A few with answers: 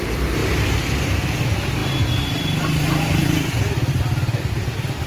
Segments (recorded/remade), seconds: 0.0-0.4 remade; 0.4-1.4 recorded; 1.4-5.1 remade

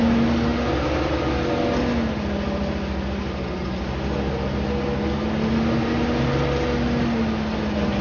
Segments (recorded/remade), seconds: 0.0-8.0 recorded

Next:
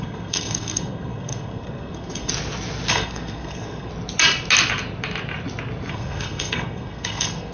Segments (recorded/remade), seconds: 0.0-2.3 remade; 2.3-2.9 recorded; 2.9-3.9 remade; 3.9-5.9 recorded; 5.9-7.5 remade

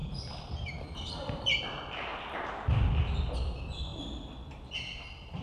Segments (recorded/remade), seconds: 0.0-5.4 recorded

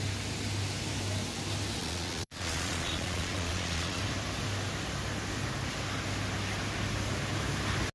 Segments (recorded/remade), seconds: 0.0-1.8 recorded; 1.8-4.0 remade; 4.0-7.9 recorded